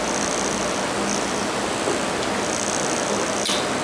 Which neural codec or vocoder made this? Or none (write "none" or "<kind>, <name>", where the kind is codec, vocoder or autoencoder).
none